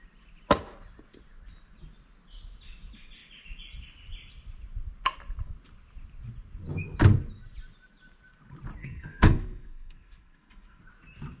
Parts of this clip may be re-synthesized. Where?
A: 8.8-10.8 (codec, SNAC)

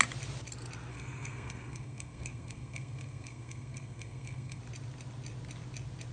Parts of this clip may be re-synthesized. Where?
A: 0.9-4.6 (codec, SNAC)